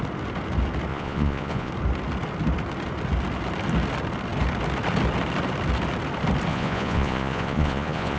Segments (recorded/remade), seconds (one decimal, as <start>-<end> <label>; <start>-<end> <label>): 0.0-0.9 recorded; 0.9-1.7 remade; 1.7-6.5 recorded; 6.5-8.2 remade